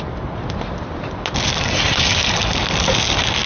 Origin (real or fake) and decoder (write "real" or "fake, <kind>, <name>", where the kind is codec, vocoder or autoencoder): real